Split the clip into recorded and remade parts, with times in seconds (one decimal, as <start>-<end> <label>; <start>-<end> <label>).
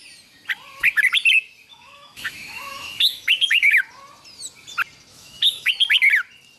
0.0-1.7 recorded; 1.7-3.8 remade; 3.8-5.1 recorded; 5.1-5.7 remade; 5.7-6.6 recorded